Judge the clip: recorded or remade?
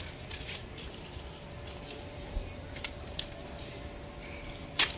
recorded